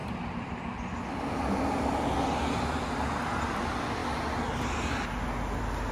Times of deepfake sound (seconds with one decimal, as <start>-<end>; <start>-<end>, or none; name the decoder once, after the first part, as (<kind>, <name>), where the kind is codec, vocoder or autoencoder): none